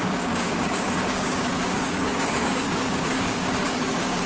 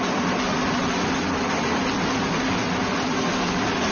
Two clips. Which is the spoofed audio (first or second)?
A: first